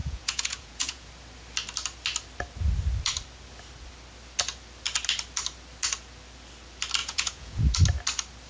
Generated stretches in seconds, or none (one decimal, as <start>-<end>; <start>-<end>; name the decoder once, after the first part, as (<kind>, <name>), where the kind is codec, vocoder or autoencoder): 0.0-1.1 (vocoder, Vocos); 7.0-7.6